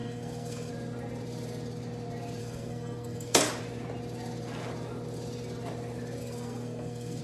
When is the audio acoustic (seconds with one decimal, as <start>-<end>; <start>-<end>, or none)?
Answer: 0.7-2.4; 3.4-6.2